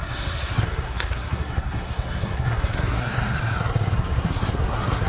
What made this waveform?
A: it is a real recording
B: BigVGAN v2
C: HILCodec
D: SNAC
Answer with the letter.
D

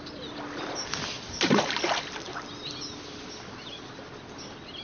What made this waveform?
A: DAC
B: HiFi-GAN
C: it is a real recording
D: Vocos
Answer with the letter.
C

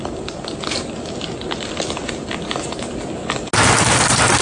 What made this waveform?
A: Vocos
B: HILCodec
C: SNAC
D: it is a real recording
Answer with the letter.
D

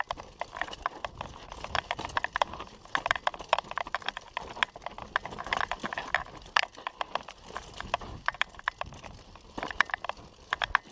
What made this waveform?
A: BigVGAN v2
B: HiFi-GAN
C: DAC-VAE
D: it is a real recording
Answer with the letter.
D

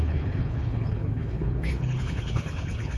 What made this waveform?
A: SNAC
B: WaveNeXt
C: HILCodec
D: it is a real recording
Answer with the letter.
C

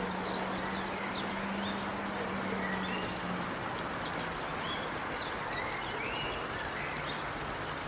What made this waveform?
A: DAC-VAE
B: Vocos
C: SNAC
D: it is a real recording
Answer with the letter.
D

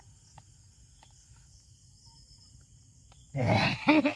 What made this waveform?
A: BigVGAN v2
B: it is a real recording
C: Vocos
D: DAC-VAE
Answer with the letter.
B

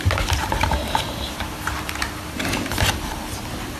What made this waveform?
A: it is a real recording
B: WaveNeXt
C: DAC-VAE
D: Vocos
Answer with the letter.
A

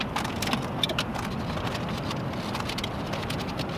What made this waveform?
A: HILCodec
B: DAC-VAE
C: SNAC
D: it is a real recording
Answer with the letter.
D